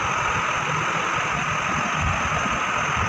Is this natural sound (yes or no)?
yes